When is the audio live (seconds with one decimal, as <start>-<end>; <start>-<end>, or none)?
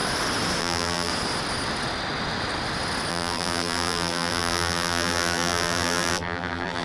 0.0-0.6; 1.1-3.1